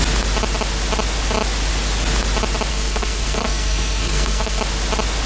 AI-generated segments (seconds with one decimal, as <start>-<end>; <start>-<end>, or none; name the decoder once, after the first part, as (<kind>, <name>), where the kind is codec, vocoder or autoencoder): 2.7-4.6 (codec, SNAC)